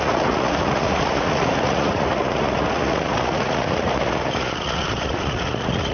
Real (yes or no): no